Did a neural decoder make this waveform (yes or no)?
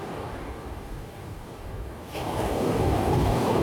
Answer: yes